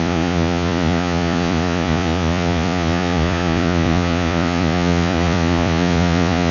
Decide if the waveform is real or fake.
fake